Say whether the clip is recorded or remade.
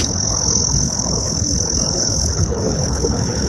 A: remade